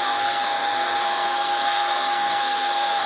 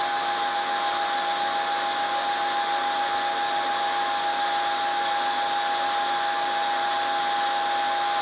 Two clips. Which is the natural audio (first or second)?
second